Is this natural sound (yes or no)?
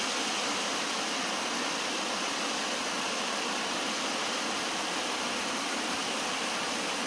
yes